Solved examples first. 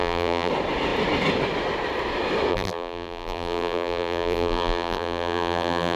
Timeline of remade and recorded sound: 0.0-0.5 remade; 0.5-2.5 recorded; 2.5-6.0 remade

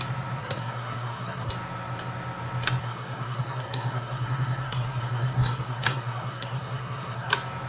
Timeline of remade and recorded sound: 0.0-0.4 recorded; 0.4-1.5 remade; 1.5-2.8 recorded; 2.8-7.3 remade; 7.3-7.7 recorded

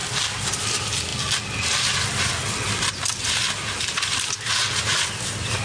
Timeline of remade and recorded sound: 0.0-5.6 recorded

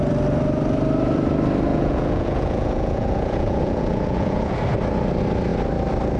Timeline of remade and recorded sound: 0.0-1.7 recorded; 1.7-4.6 remade; 4.6-6.2 recorded